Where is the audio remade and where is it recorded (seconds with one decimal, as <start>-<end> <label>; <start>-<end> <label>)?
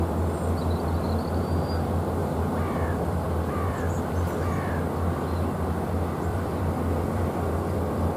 0.0-2.2 recorded; 2.2-4.7 remade; 4.7-6.3 recorded; 6.3-8.2 remade